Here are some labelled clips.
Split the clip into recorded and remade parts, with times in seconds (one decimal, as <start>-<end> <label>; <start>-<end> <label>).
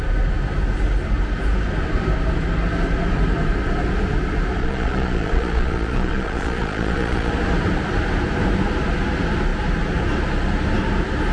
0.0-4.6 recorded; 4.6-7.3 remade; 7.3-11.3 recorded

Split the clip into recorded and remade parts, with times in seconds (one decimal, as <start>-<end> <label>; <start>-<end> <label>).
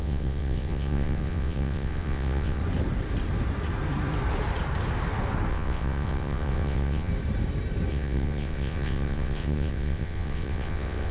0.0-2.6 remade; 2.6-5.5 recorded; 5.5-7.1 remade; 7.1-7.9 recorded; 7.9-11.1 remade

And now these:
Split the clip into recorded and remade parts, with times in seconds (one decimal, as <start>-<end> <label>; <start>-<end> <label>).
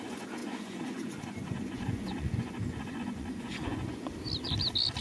0.0-4.1 remade; 4.1-5.0 recorded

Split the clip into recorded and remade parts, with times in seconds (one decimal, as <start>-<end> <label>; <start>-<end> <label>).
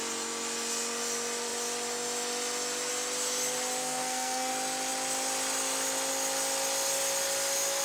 0.0-3.8 recorded; 3.8-4.5 remade; 4.5-7.8 recorded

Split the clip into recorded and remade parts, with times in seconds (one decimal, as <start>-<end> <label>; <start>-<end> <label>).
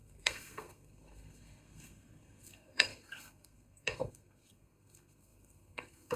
0.0-6.2 remade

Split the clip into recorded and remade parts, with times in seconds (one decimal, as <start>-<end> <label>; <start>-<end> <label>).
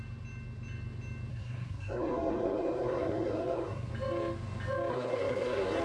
0.0-1.3 recorded; 1.3-3.9 remade; 3.9-4.9 recorded; 4.9-5.8 remade